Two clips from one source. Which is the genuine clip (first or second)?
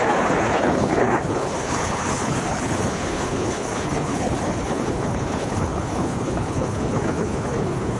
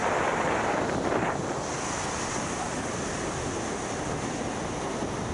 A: second